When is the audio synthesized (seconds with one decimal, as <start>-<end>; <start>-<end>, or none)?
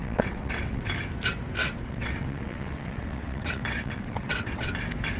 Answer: 0.0-0.9; 1.6-4.7